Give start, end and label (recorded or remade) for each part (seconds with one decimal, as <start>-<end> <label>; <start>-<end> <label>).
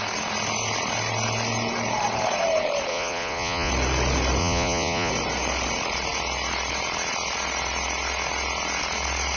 0.0-2.9 recorded; 2.9-3.7 remade; 3.7-4.4 recorded; 4.4-5.1 remade; 5.1-9.4 recorded